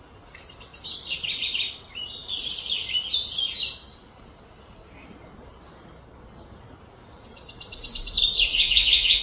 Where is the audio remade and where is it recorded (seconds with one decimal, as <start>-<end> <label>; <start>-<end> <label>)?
0.0-8.5 recorded; 8.5-9.2 remade